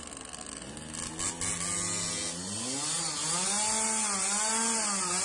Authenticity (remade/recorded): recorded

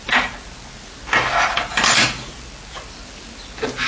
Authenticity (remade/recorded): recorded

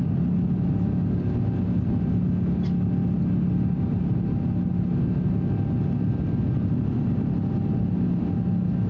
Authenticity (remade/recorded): recorded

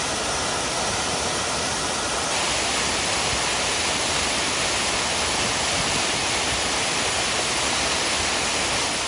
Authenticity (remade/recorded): recorded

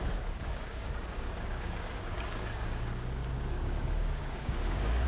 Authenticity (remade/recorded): remade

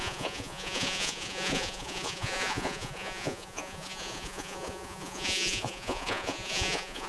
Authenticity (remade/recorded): remade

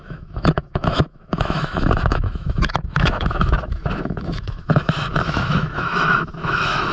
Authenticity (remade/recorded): remade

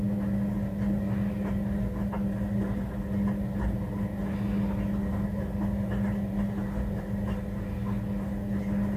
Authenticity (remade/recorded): recorded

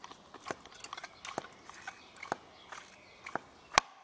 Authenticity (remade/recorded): recorded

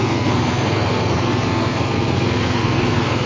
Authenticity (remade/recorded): remade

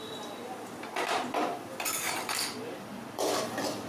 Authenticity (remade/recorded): remade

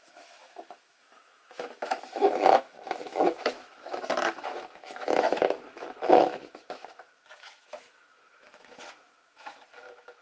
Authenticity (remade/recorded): remade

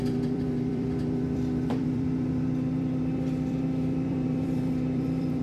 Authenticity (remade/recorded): remade